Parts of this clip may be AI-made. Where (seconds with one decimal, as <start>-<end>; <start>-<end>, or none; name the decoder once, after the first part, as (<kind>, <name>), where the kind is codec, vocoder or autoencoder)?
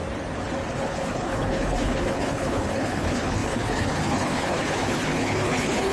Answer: 0.7-5.9 (codec, HILCodec)